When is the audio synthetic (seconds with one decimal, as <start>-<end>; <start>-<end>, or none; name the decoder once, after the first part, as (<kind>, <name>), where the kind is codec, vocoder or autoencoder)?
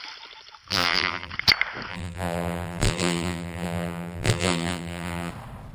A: 0.7-1.3 (vocoder, BigVGAN v2); 1.9-5.3